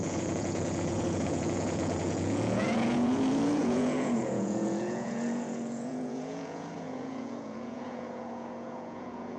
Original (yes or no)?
no